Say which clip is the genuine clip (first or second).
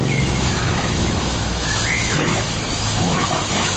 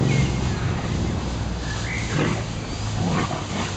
second